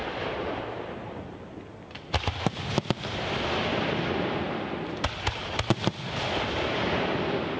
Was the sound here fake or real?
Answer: real